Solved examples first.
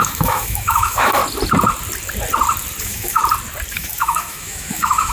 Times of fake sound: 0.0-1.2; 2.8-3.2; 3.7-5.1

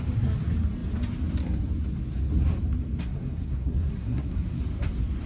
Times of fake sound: 3.0-4.6

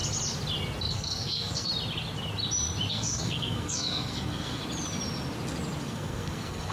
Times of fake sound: 0.9-1.7; 2.9-4.6; 5.8-6.7

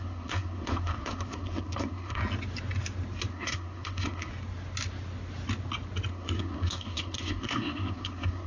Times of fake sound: 0.0-2.2; 3.3-4.3; 6.1-8.5

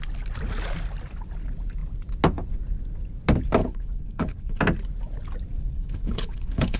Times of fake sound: 3.6-4.6; 5.6-6.8

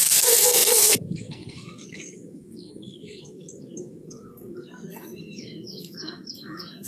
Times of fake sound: 0.0-6.9